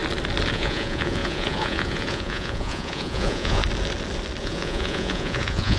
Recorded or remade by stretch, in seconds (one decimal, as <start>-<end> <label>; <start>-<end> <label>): 0.0-0.5 recorded; 0.5-3.6 remade; 3.6-4.4 recorded; 4.4-5.8 remade

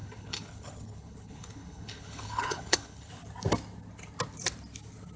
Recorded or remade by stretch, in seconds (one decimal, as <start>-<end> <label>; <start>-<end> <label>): 0.0-3.1 remade; 3.1-5.2 recorded

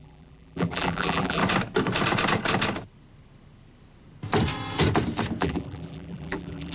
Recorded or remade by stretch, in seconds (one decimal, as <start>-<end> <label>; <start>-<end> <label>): 0.0-1.4 remade; 1.4-5.4 recorded; 5.4-6.7 remade

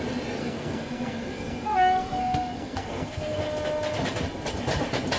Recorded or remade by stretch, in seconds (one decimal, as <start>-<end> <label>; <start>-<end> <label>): 0.0-0.4 recorded; 0.4-3.4 remade; 3.4-5.2 recorded

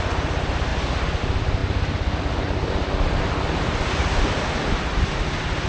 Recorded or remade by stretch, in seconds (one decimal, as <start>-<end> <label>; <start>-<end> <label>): 0.0-5.7 remade

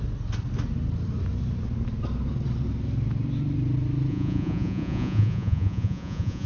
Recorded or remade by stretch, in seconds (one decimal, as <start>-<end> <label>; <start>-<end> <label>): 0.0-4.1 recorded; 4.1-6.5 remade

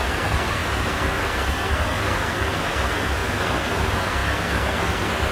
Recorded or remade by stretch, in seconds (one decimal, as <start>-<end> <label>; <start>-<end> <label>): 0.0-5.3 remade

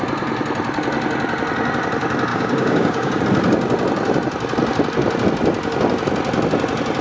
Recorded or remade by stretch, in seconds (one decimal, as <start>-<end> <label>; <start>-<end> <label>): 0.0-2.3 recorded; 2.3-3.2 remade; 3.2-7.0 recorded